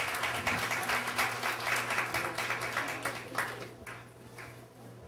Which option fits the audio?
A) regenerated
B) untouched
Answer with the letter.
B